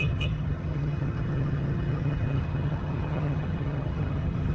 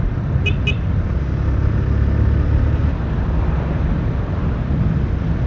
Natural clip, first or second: second